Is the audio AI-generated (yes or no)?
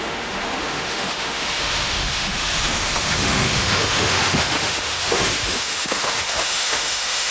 yes